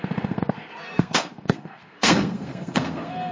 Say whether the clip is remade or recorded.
remade